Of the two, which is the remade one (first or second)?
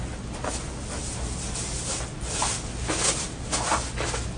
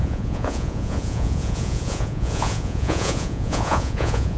second